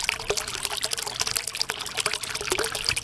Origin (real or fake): real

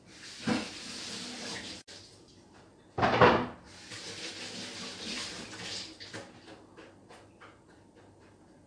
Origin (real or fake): real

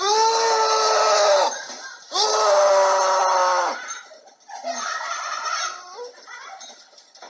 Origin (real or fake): real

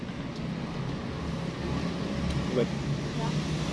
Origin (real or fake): real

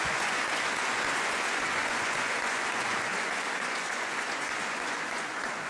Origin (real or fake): fake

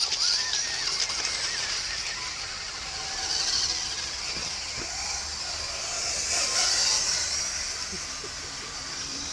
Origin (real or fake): real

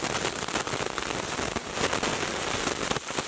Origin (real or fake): real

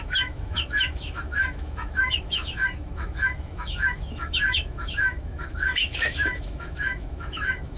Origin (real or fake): fake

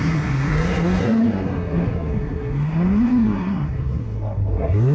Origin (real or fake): fake